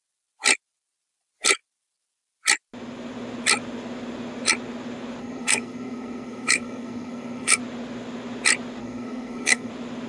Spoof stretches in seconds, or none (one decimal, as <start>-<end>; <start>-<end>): 5.2-7.6; 8.8-9.7

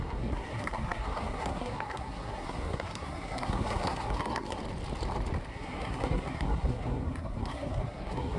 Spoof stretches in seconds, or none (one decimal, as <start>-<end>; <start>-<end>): 0.0-4.6; 5.5-8.4